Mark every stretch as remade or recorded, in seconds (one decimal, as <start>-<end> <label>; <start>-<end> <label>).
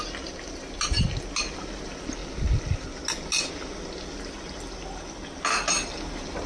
0.0-6.5 recorded